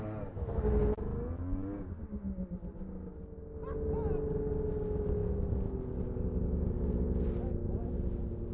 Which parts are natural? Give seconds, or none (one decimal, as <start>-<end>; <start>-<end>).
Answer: 0.0-8.5